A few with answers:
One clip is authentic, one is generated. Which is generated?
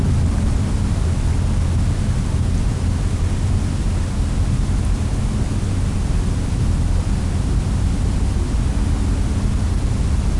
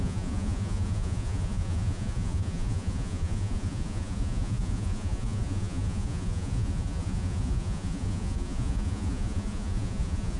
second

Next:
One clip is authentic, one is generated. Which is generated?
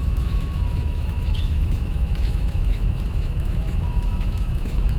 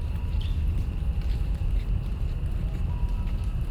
first